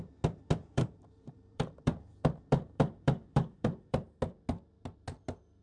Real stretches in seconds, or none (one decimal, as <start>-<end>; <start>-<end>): 0.0-0.6; 4.0-5.6